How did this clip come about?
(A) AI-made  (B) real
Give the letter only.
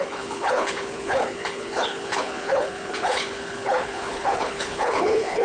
A